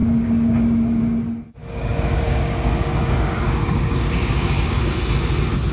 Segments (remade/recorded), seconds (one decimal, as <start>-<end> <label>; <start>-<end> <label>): 0.0-1.0 remade; 1.0-1.6 recorded; 1.6-5.0 remade; 5.0-5.7 recorded